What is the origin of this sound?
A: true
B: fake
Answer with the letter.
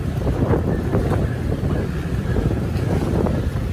A